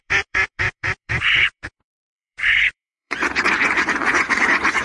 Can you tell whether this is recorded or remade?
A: remade